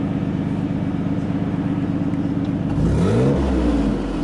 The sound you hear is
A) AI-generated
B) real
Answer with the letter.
B